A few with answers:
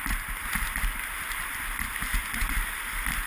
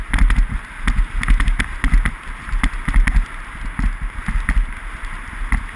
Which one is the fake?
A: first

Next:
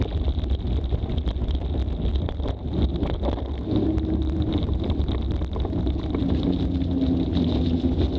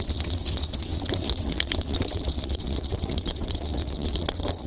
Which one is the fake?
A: second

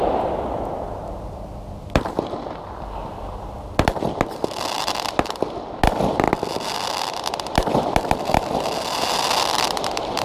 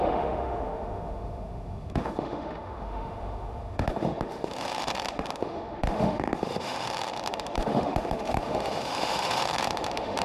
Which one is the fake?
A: second